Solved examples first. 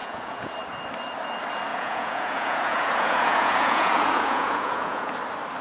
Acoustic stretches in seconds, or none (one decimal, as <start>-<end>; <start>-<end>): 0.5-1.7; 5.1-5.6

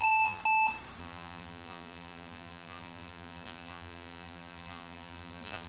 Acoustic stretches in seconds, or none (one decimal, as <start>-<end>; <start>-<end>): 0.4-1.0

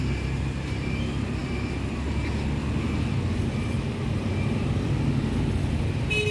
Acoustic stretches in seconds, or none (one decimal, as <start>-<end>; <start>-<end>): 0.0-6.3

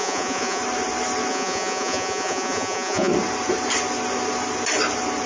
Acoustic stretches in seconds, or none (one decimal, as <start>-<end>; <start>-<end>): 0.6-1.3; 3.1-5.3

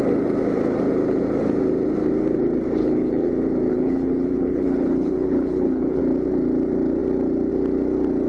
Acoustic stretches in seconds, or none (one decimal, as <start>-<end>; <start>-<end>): 0.0-2.8; 3.3-3.7; 6.0-8.3